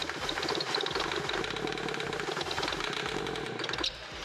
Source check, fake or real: real